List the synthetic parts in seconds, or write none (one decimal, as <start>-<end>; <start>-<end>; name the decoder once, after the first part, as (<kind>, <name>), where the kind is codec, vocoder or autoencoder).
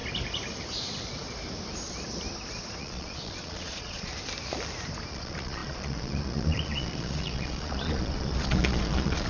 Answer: 2.8-4.1 (vocoder, Vocos); 5.1-9.3